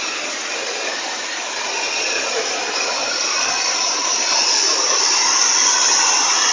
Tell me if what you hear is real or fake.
real